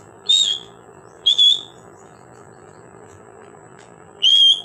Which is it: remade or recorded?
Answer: remade